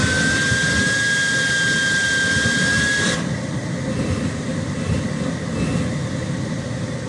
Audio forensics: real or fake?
real